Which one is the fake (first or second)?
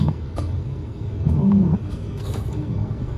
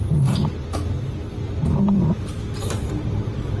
first